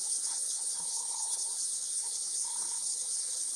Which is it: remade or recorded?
remade